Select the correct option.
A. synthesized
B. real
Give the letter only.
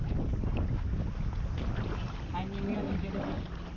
B